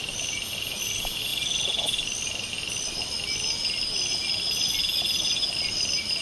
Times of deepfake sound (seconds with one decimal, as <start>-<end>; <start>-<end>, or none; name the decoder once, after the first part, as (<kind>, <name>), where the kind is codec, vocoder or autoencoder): 0.0-1.3 (vocoder, BigVGAN v2); 5.0-6.2